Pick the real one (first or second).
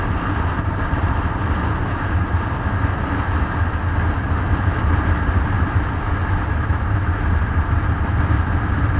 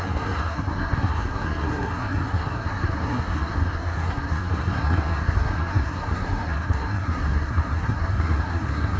first